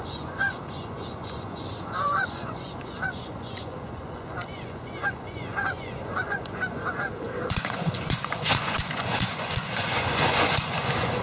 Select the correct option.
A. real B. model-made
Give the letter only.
B